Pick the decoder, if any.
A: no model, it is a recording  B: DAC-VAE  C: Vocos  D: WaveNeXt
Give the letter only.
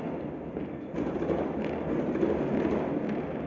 A